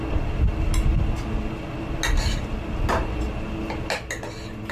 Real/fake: real